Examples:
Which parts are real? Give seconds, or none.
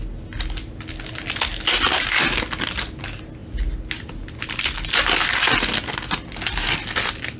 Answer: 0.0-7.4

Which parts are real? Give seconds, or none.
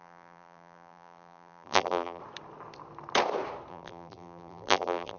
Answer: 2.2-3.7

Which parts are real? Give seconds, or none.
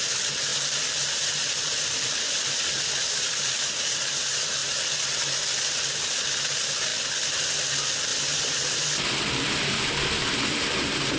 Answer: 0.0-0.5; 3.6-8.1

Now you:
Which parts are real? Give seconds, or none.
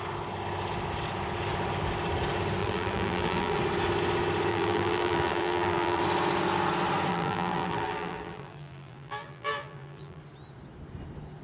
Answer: 0.0-2.6; 3.6-4.5; 6.0-7.1; 10.2-11.4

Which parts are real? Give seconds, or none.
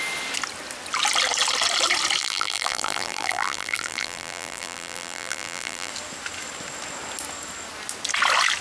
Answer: 0.0-2.2; 5.9-8.6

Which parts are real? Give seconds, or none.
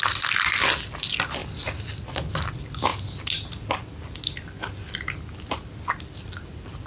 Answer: 1.4-2.1; 2.9-6.0